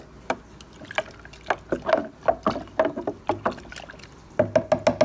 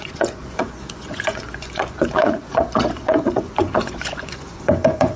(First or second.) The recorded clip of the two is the first